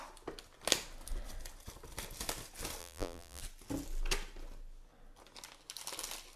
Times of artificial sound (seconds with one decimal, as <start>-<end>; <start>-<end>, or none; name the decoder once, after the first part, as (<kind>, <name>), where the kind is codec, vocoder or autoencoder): 2.8-3.4 (vocoder, BigVGAN v2)